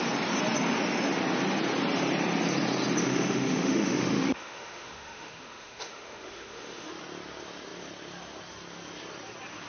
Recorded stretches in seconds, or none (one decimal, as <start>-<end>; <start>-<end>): 0.0-3.0; 6.9-9.7